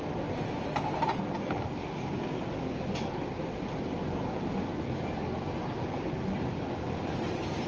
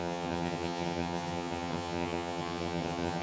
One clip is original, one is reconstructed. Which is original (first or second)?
first